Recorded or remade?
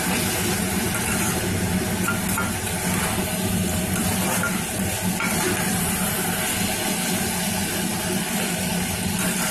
recorded